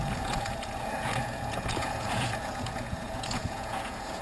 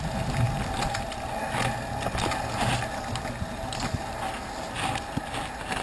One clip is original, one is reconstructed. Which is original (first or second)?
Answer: second